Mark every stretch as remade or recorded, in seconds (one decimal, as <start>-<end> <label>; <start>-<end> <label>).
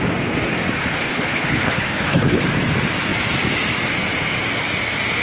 0.0-1.0 recorded; 1.0-2.4 remade; 2.4-5.2 recorded